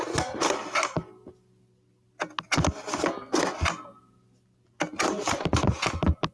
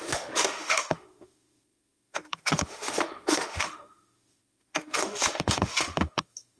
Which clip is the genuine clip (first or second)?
first